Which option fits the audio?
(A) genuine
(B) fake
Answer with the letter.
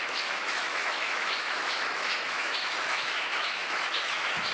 B